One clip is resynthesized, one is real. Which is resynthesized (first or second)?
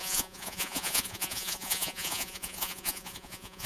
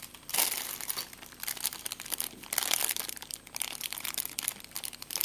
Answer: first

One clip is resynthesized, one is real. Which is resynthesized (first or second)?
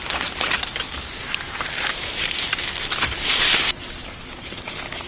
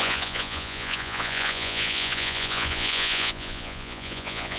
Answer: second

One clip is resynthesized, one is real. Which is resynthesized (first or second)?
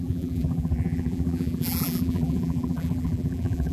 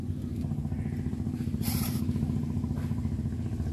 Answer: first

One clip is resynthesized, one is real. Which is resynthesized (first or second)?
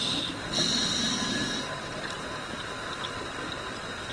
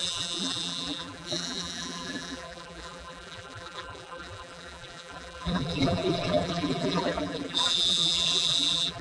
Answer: second